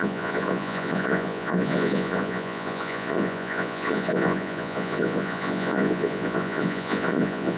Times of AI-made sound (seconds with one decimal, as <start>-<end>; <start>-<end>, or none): 0.0-7.6